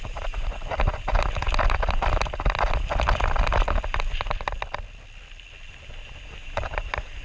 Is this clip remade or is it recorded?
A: recorded